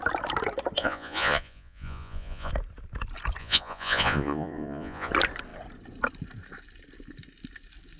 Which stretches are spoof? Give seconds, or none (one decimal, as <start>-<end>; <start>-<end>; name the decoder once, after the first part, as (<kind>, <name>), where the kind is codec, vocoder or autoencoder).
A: 0.8-2.5 (vocoder, Vocos); 3.4-5.1

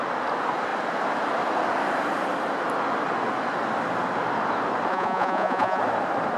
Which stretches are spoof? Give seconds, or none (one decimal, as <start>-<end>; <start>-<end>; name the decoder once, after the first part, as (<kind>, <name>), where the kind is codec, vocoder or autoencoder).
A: 4.9-5.8 (vocoder, Vocos)

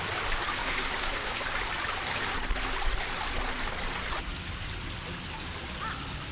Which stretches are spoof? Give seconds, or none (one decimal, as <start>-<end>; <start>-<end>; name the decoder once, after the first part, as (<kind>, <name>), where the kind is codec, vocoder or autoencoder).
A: 0.6-1.4 (codec, DAC)

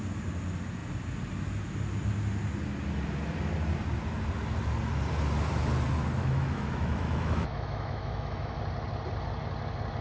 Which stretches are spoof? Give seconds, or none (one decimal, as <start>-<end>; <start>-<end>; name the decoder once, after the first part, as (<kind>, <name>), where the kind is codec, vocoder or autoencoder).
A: 6.2-8.6 (autoencoder, DAC-VAE)

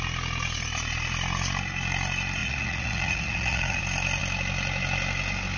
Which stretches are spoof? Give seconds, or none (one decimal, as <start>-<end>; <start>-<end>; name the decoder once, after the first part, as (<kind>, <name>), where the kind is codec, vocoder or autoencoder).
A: 2.4-3.8 (vocoder, Vocos)

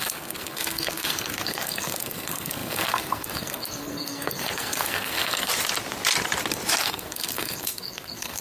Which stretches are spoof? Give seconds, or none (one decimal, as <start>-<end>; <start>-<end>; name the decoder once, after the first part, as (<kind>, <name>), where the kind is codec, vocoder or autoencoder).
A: 0.0-5.5 (codec, SNAC); 6.8-8.4

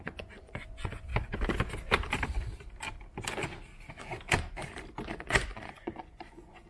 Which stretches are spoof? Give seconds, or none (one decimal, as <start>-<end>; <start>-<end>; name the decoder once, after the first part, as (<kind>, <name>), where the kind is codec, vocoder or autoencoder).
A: 0.0-1.1 (vocoder, Vocos); 5.1-6.7